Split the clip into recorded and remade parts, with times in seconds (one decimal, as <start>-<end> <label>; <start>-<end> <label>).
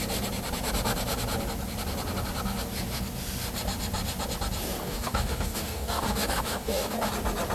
0.0-4.8 recorded; 4.8-7.1 remade; 7.1-7.5 recorded